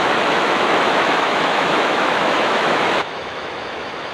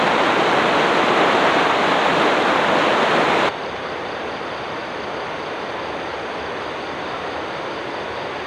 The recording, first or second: second